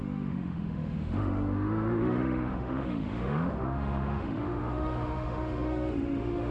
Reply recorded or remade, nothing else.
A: remade